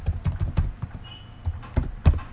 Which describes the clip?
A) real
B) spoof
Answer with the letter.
B